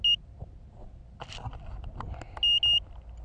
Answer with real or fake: real